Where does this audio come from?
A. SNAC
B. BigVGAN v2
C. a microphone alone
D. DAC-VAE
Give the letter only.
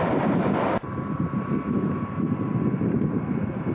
C